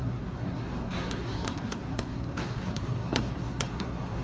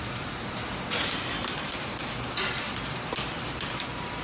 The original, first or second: second